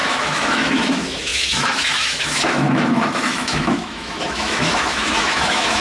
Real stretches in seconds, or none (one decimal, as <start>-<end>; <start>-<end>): none